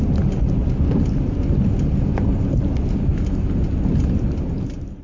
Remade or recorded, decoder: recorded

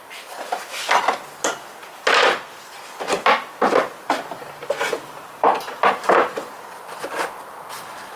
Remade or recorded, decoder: recorded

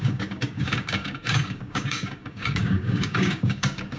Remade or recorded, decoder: remade, codec, DAC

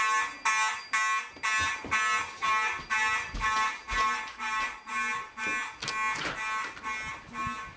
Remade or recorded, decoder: recorded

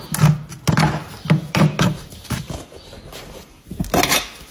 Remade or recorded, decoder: recorded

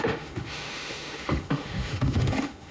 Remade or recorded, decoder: remade, autoencoder, DAC-VAE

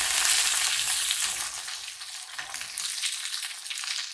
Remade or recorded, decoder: recorded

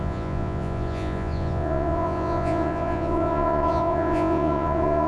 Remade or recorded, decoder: remade, vocoder, Vocos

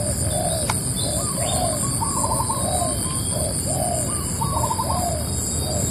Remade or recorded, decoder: recorded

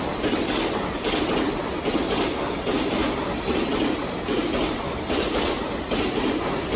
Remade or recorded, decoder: recorded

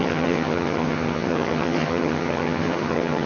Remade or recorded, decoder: remade, vocoder, HiFi-GAN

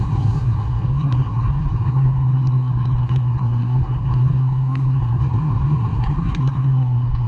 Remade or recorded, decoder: remade, codec, SNAC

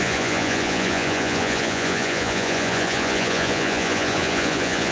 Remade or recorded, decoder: remade, vocoder, Vocos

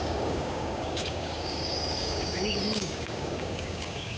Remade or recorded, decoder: remade, codec, DAC